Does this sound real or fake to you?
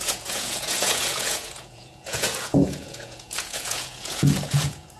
fake